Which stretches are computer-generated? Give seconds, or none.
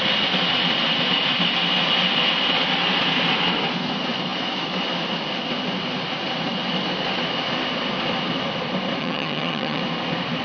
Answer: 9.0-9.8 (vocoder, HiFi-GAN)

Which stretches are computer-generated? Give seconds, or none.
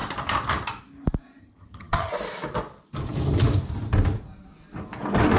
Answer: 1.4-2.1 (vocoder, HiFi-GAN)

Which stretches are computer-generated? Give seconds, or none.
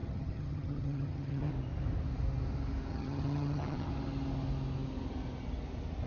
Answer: 0.0-1.5 (vocoder, HiFi-GAN); 2.9-3.9